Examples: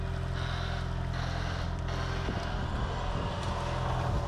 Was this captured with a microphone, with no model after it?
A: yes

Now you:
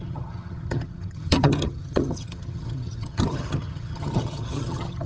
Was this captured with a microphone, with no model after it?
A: no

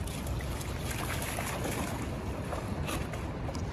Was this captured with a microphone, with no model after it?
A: yes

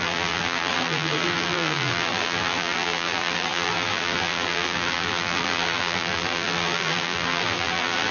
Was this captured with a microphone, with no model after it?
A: no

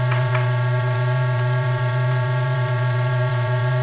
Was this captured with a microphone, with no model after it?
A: no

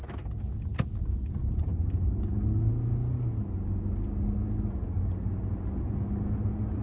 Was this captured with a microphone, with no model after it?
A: yes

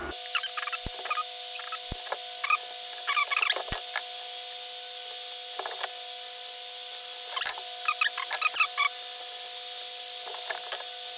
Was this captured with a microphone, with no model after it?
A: yes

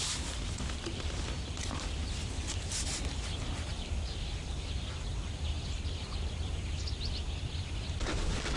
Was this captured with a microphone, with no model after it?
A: yes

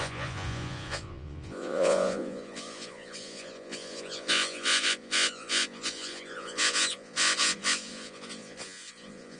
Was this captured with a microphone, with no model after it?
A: no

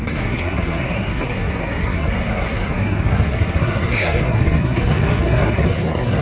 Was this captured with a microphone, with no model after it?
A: no